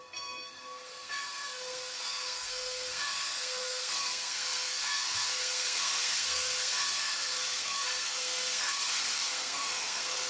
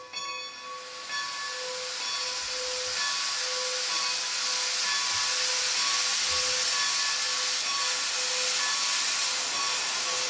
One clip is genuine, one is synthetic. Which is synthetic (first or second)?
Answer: first